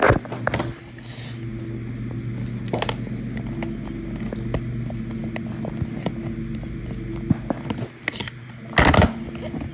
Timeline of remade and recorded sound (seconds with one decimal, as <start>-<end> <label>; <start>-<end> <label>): 0.0-9.7 recorded